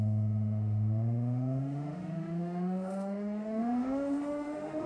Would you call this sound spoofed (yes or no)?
yes